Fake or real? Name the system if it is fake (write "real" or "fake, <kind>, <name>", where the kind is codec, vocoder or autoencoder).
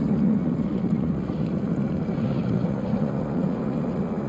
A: fake, vocoder, Vocos